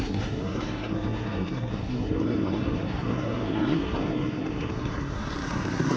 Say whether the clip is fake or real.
fake